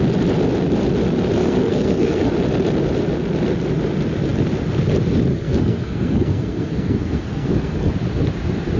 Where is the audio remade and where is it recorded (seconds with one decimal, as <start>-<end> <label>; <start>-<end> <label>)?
0.0-1.4 recorded; 1.4-2.3 remade; 2.3-5.3 recorded; 5.3-7.9 remade; 7.9-8.8 recorded